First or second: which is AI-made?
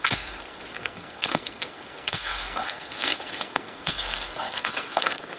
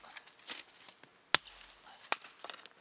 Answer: first